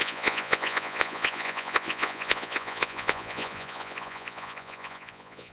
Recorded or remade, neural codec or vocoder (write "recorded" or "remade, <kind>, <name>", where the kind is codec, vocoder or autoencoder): remade, vocoder, Vocos